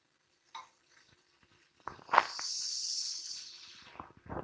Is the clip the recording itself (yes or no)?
yes